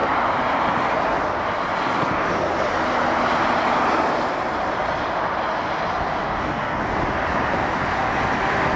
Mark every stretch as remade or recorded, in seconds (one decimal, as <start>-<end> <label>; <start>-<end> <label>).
0.0-6.2 recorded; 6.2-6.8 remade; 6.8-8.8 recorded